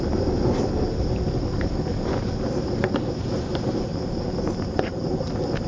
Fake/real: real